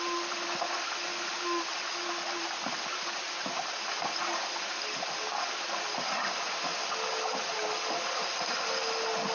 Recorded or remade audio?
recorded